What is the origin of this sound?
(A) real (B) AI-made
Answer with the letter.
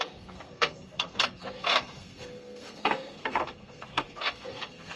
B